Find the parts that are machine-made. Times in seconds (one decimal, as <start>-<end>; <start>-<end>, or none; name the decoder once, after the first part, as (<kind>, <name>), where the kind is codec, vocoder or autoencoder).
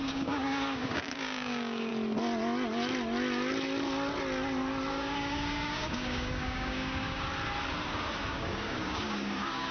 0.0-1.9 (codec, DAC); 4.9-7.3; 8.3-9.7